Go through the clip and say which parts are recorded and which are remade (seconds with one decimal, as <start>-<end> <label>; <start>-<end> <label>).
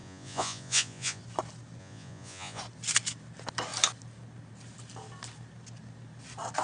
0.0-1.2 remade; 1.2-1.8 recorded; 1.8-2.6 remade; 2.6-6.6 recorded